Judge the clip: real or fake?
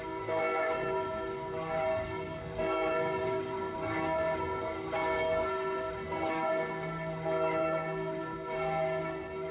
fake